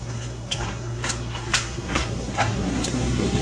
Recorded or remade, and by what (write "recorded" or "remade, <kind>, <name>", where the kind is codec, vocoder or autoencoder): remade, codec, SNAC